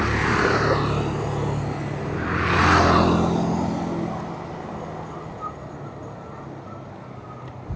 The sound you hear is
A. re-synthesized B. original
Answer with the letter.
B